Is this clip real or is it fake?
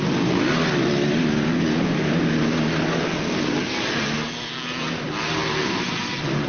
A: real